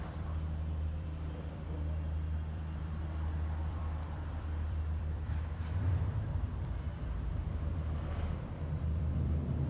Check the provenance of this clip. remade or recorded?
remade